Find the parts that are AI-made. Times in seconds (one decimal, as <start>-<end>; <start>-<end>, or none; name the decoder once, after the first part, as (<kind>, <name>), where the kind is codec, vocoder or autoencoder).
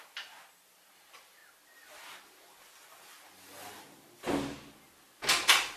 none